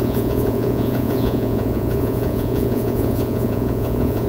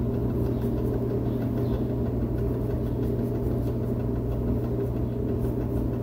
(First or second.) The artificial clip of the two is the first